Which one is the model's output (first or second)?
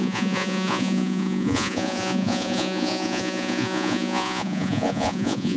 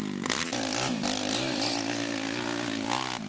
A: first